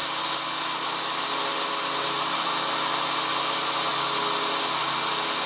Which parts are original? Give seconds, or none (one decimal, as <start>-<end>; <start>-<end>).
0.0-5.5